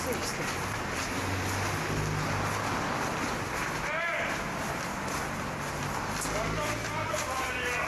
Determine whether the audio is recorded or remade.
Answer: recorded